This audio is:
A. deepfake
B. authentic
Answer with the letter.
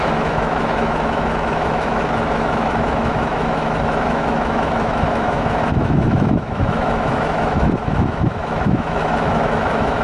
A